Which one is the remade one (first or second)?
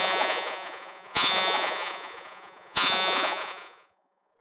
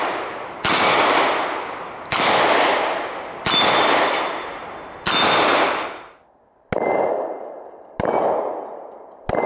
first